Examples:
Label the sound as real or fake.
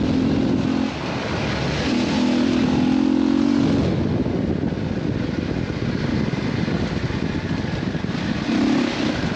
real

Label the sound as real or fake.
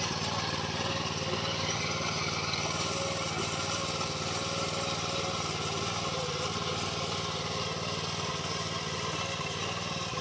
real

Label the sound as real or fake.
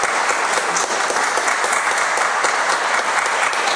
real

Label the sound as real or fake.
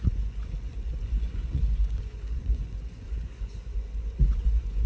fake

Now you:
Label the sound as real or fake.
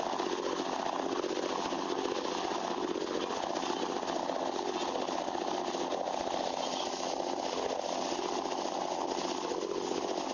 real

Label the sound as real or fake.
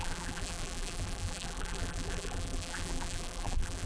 fake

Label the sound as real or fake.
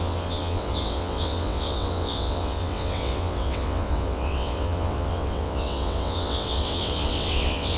fake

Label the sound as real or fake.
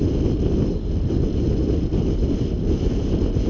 real